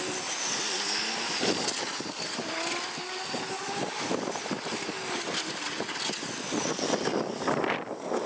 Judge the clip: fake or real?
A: real